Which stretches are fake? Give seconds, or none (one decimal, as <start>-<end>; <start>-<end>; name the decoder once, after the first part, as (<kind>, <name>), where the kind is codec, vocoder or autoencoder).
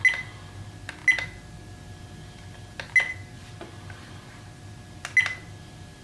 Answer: none